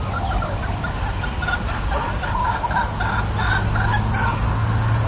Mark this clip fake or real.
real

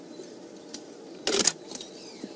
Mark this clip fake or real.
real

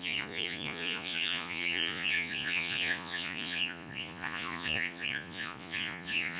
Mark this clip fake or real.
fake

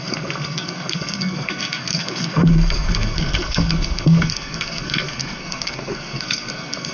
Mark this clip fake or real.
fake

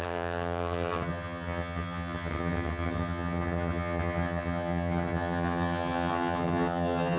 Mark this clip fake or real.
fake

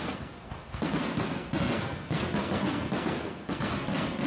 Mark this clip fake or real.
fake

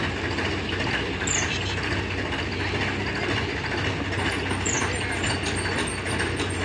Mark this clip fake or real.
real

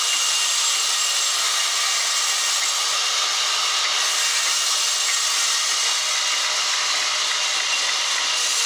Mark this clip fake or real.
real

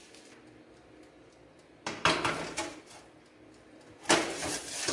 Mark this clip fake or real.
real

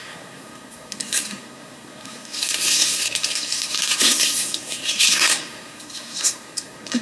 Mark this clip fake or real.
fake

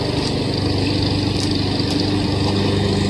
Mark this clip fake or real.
real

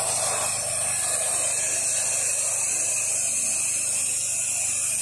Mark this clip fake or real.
real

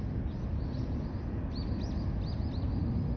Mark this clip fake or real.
real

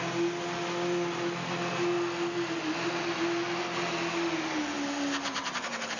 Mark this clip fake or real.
real